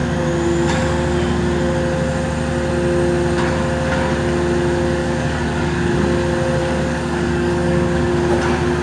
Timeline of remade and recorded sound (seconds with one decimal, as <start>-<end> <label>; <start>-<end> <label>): 0.0-5.0 recorded; 5.0-5.9 remade; 5.9-6.6 recorded; 6.6-8.1 remade; 8.1-8.8 recorded